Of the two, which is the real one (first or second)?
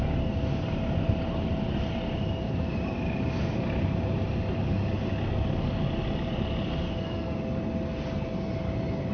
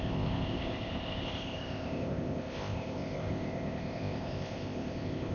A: first